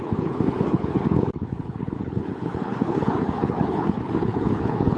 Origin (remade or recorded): remade